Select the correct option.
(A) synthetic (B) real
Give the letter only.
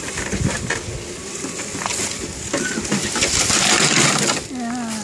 B